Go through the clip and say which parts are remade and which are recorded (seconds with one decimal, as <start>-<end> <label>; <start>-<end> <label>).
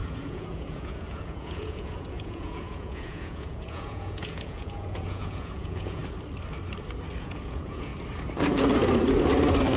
0.0-6.0 remade; 6.0-7.2 recorded; 7.2-7.9 remade; 7.9-9.8 recorded